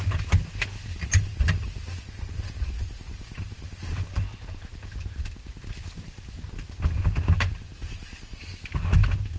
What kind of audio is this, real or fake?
real